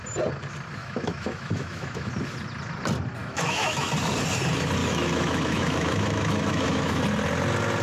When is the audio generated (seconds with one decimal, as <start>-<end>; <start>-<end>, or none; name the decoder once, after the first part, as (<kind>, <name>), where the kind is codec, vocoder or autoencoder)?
0.8-2.1 (autoencoder, DAC-VAE); 3.2-3.9; 4.8-7.0